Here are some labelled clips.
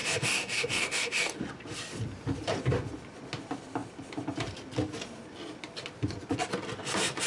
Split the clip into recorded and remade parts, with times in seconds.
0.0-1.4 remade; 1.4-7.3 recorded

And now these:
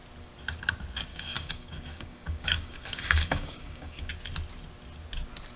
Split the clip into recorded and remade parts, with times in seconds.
0.0-1.1 recorded; 1.1-4.1 remade; 4.1-5.6 recorded

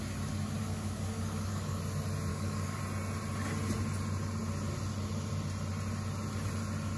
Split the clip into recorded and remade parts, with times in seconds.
0.0-0.6 recorded; 0.6-1.8 remade; 1.8-2.3 recorded; 2.3-2.8 remade; 2.8-7.0 recorded